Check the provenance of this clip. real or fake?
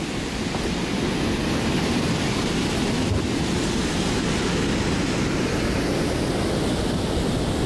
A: real